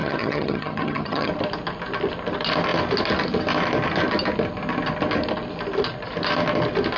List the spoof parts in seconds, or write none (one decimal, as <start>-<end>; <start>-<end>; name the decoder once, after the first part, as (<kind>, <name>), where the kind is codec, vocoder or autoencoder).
0.0-1.3 (vocoder, HiFi-GAN)